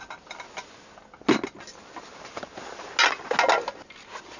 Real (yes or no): yes